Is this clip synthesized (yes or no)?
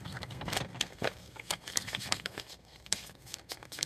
yes